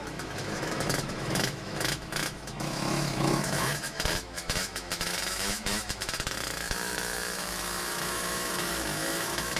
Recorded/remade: remade